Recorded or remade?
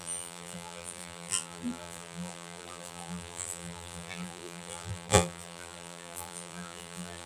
remade